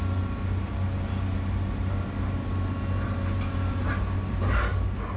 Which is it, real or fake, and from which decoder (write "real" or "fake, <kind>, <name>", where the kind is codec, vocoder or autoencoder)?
real